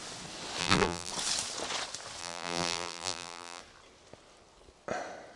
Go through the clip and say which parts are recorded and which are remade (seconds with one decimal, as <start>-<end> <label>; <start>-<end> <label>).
0.0-0.6 recorded; 0.6-1.1 remade; 1.1-2.2 recorded; 2.2-3.6 remade; 3.6-5.4 recorded